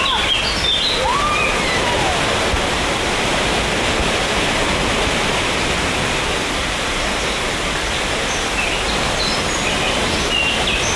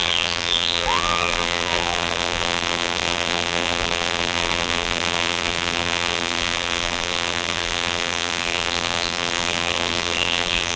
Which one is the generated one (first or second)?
second